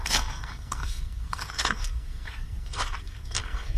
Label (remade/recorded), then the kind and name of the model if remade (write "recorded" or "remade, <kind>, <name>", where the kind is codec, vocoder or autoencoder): remade, codec, SNAC